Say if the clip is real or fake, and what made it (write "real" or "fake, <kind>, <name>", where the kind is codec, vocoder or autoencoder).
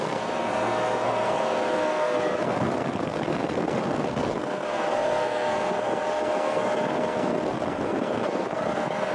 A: fake, codec, SNAC